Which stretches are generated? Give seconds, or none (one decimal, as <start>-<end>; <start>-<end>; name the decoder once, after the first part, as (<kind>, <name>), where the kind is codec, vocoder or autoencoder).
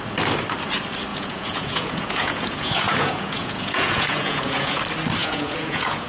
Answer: 1.1-4.8 (vocoder, Vocos); 5.2-6.1